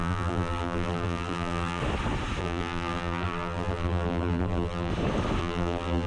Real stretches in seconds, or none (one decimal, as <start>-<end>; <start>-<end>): 1.8-2.4; 4.9-5.4